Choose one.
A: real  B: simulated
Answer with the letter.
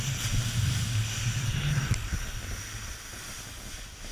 A